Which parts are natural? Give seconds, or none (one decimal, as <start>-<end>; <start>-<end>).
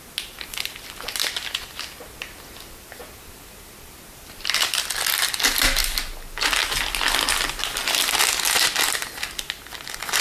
0.0-10.2